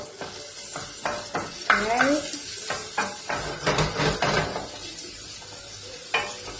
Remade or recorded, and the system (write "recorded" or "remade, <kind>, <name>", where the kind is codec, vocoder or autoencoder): recorded